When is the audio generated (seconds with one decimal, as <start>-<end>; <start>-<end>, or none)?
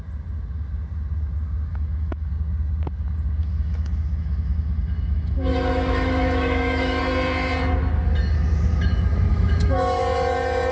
1.7-2.3; 3.4-7.0; 9.3-10.0